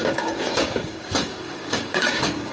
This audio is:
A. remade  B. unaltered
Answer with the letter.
A